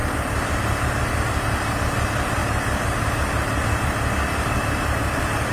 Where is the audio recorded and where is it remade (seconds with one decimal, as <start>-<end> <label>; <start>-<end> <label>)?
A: 0.0-5.5 recorded